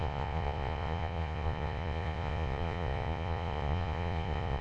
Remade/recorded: remade